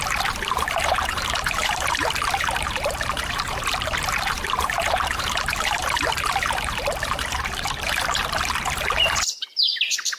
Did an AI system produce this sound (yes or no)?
yes